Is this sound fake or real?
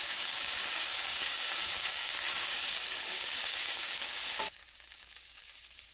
fake